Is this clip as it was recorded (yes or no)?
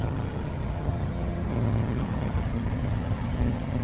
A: no